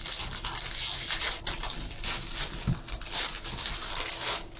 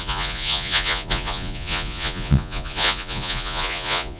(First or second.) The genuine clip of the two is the first